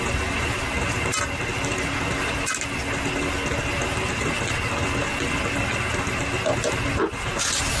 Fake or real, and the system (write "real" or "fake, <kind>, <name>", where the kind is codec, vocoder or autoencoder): real